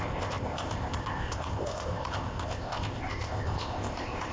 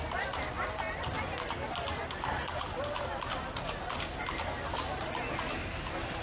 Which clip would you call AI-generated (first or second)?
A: first